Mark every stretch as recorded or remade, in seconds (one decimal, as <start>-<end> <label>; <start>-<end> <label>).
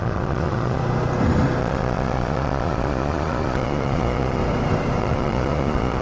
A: 0.0-0.8 remade; 0.8-1.6 recorded; 1.6-4.4 remade; 4.4-5.0 recorded; 5.0-6.0 remade